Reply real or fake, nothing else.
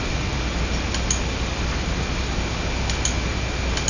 real